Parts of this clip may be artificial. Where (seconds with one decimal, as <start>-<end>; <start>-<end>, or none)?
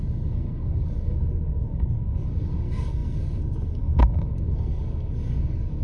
0.0-5.8